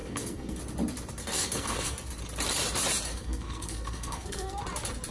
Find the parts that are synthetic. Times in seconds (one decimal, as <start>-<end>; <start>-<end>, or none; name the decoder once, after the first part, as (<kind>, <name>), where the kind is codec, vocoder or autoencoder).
0.0-0.6 (codec, SNAC); 1.2-2.1; 3.1-4.6